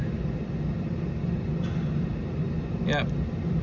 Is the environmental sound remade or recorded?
recorded